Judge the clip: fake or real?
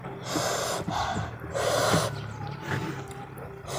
real